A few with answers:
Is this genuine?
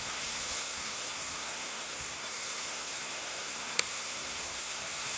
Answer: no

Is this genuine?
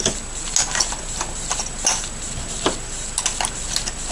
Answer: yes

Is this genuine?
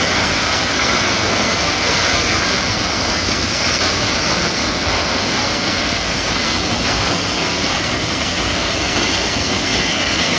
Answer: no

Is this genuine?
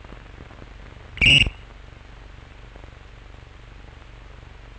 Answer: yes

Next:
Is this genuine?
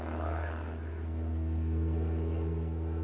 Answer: no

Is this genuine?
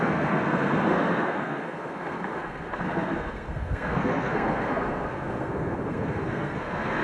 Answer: no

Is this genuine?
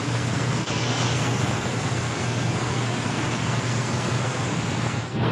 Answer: no